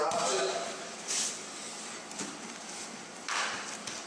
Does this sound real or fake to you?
fake